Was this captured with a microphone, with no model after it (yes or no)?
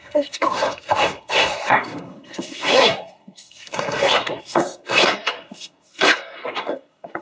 no